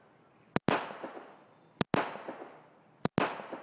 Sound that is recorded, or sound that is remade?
recorded